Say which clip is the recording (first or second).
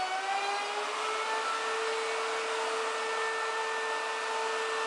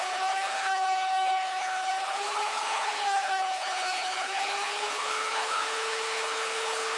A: first